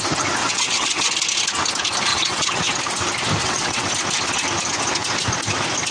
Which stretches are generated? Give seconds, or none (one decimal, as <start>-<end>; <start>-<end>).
0.4-1.1; 2.1-2.8; 3.4-3.9

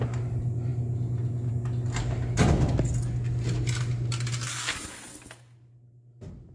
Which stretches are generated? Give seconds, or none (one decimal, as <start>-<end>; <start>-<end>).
none

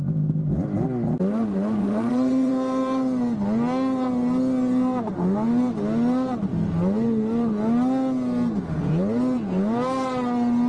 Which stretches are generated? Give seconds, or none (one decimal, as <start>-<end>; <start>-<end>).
1.8-2.5

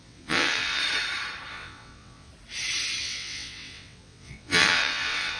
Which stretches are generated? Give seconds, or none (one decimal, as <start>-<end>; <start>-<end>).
0.0-0.8; 1.5-2.3; 3.0-5.4

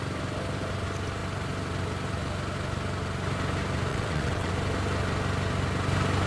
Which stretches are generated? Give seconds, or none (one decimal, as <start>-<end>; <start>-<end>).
3.9-4.5